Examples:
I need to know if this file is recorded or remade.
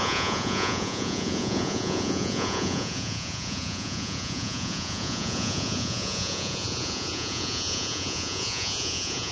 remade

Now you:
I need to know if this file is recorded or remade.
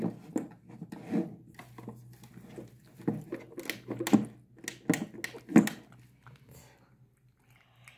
recorded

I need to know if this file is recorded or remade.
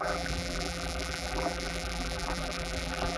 remade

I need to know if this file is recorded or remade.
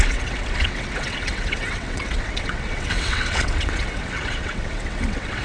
remade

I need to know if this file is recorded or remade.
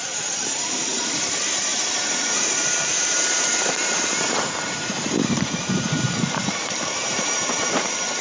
remade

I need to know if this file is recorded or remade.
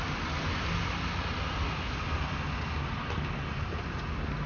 recorded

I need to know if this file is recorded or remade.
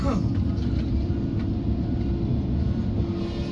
recorded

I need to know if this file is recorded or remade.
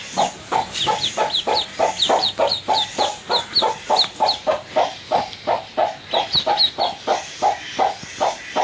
recorded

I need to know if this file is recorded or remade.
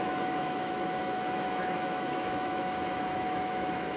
remade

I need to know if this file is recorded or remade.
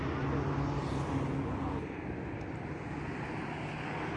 recorded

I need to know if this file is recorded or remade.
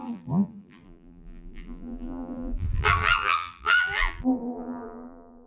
remade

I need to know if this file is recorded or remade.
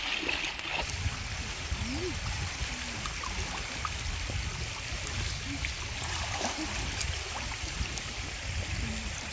recorded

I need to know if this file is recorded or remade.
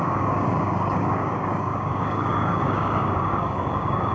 remade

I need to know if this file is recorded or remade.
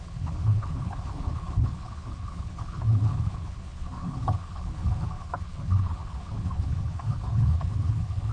remade